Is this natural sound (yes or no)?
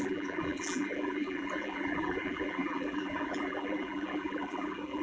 no